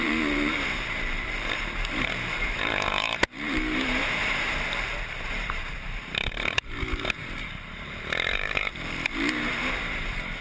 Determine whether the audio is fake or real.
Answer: fake